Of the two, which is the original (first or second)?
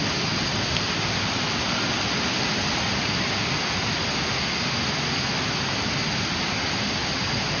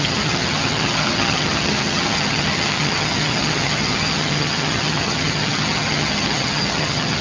first